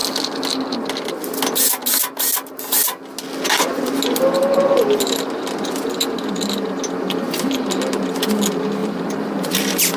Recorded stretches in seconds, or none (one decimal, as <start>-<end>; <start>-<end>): 0.0-8.8; 9.6-10.0